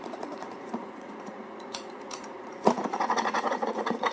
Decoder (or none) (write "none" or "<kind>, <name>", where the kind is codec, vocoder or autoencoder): vocoder, Vocos